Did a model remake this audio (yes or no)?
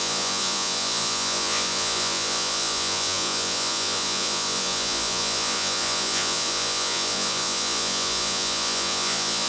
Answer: yes